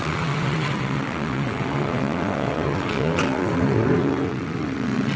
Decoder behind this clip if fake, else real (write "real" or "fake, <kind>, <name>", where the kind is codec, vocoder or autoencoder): fake, vocoder, WaveNeXt